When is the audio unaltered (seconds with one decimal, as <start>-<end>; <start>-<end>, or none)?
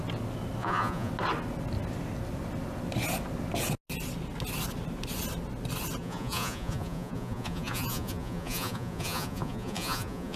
0.0-0.6; 1.1-6.0